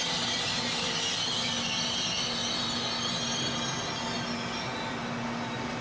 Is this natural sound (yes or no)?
yes